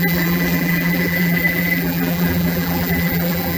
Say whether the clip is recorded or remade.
remade